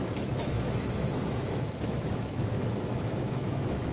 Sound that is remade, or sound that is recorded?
remade